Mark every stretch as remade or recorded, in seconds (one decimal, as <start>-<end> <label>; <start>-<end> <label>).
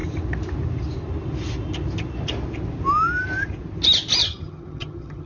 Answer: 0.0-4.2 recorded; 4.2-5.3 remade